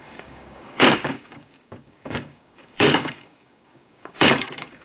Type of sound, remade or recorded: remade